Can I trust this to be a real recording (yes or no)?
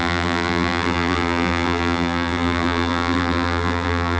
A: no